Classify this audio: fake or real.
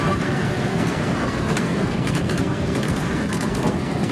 fake